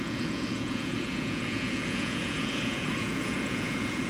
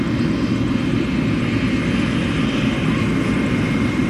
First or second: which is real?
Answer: second